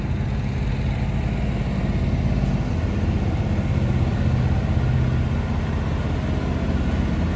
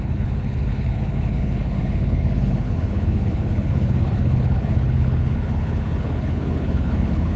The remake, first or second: second